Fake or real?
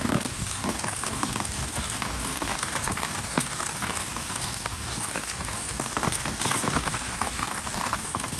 fake